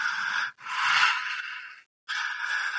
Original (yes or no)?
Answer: yes